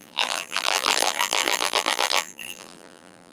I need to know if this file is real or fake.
fake